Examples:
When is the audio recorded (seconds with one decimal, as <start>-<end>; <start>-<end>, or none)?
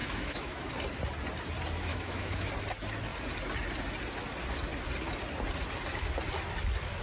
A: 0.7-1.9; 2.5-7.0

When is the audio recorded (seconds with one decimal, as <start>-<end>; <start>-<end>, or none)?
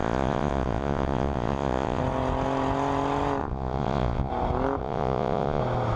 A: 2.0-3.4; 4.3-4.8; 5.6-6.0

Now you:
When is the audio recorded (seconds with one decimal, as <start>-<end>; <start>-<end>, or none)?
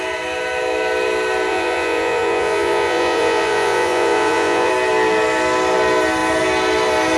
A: 0.0-1.5; 4.7-7.2